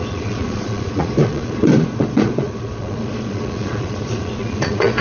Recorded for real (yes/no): no